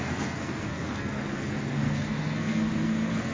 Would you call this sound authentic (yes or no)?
no